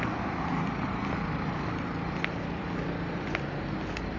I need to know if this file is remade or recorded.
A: recorded